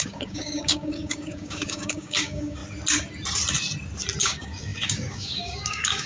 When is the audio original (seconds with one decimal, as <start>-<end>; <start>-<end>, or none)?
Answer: 2.6-4.2